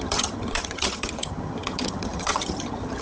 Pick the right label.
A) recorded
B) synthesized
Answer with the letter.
B